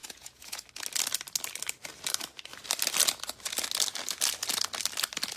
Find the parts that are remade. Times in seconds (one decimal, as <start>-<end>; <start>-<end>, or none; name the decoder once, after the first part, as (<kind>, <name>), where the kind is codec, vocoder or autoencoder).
0.0-0.6 (vocoder, Vocos)

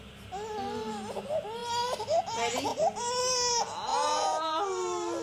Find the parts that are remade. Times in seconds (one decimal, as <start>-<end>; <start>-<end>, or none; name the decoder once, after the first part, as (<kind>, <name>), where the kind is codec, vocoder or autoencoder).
3.9-4.6 (vocoder, Vocos)